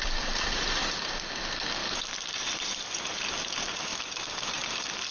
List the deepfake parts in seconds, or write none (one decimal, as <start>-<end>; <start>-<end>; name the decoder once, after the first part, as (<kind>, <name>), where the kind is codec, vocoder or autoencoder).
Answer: none